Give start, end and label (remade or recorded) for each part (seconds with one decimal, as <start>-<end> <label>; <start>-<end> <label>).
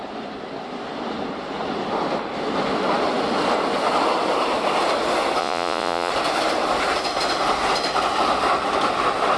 0.0-5.4 recorded; 5.4-6.1 remade; 6.1-9.4 recorded